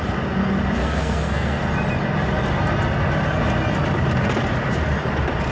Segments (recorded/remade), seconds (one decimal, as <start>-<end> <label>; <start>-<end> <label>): 0.0-0.8 recorded; 0.8-1.6 remade; 1.6-5.5 recorded